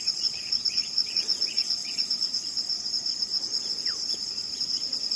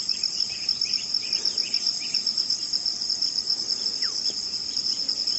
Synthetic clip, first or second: first